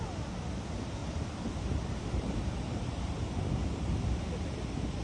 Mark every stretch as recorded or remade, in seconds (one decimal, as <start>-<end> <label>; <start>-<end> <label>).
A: 0.0-1.0 recorded; 1.0-3.0 remade; 3.0-3.6 recorded; 3.6-4.4 remade; 4.4-5.0 recorded